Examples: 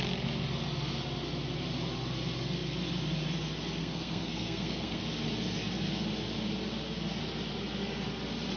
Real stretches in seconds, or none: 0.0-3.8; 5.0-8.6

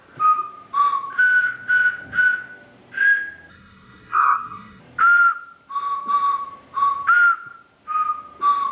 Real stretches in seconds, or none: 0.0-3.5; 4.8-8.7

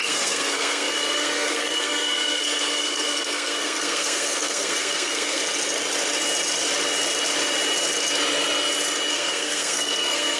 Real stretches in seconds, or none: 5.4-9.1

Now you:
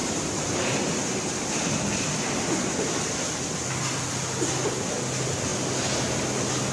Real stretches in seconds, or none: 0.0-6.7

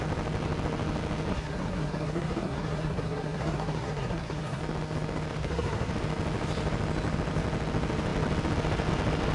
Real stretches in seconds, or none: 0.0-1.3; 4.6-5.4; 5.9-9.3